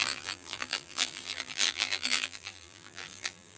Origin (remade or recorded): remade